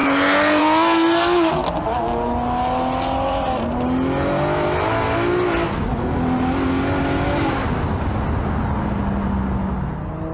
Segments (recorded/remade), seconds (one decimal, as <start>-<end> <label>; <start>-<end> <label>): 0.0-10.3 recorded